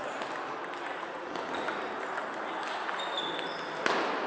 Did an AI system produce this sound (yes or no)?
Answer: no